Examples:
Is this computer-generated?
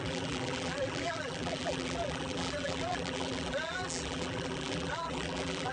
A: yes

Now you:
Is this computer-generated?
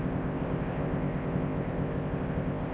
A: yes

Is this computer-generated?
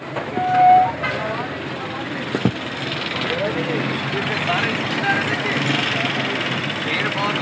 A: no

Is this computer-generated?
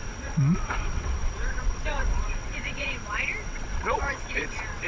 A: yes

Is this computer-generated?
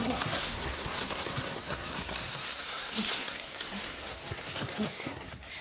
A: yes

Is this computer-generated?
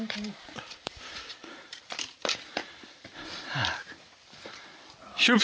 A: yes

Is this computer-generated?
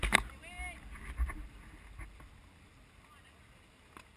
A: no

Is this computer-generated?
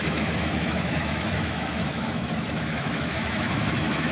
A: yes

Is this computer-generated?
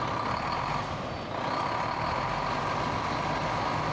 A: no